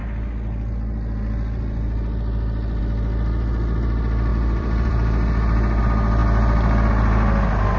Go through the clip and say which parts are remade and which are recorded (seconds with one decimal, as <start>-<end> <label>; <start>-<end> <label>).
0.0-4.3 recorded; 4.3-5.8 remade; 5.8-7.8 recorded